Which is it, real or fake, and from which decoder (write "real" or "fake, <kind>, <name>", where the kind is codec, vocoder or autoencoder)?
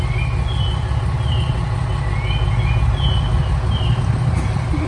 real